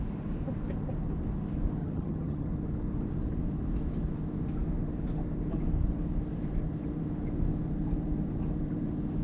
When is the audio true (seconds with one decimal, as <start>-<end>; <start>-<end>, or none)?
0.0-1.8; 2.5-9.2